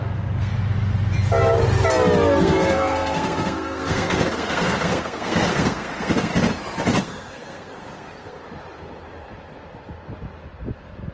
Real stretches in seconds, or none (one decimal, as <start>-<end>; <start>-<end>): 0.5-2.4; 6.3-7.0; 8.4-11.1